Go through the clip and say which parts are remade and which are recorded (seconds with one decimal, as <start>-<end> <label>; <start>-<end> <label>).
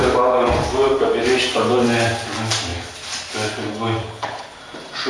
0.0-4.0 recorded; 4.0-4.6 remade; 4.6-5.1 recorded